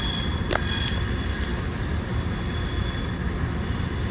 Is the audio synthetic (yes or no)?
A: no